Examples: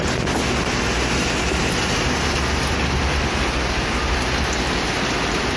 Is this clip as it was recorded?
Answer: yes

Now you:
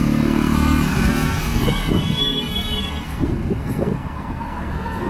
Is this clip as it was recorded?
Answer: no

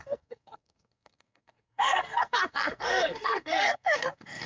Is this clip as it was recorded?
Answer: no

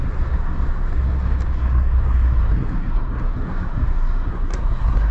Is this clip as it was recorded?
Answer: no